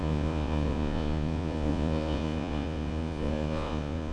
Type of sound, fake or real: fake